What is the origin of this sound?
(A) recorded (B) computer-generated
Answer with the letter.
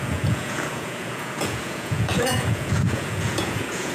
B